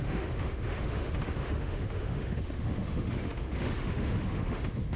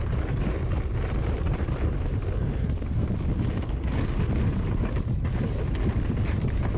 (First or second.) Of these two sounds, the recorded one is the second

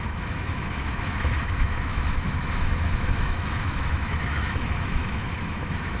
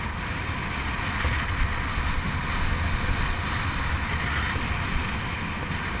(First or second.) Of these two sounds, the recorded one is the second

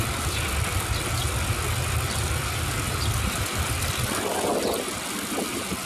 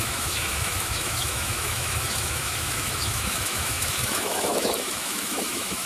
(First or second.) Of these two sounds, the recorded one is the first